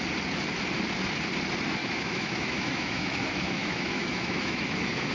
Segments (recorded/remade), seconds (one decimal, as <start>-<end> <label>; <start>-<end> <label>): 0.0-1.8 recorded; 1.8-5.1 remade